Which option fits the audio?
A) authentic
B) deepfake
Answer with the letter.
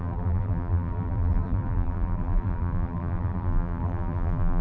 B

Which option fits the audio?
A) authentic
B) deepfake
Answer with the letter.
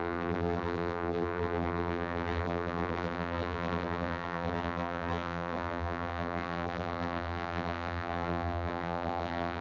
B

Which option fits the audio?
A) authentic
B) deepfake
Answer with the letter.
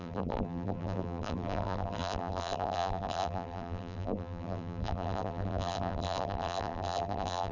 B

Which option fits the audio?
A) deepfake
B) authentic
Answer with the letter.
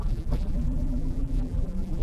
A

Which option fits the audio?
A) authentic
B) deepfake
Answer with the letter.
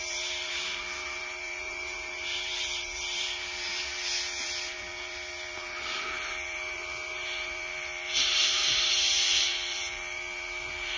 B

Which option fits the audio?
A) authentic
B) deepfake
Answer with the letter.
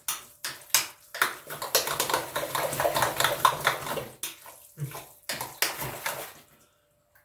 A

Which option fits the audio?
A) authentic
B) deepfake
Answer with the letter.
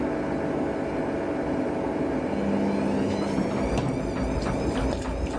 A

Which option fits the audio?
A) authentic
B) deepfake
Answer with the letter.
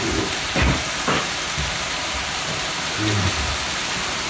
B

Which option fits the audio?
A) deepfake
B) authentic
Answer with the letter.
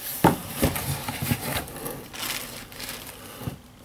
B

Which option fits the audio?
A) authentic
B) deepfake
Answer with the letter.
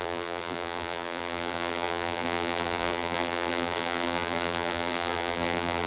B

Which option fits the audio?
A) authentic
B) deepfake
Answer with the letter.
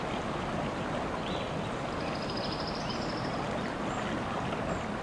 A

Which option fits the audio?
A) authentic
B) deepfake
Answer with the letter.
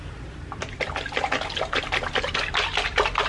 A